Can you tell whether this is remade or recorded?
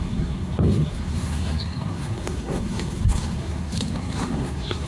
remade